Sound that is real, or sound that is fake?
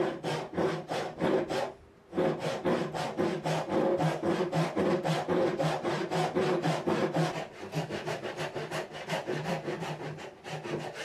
real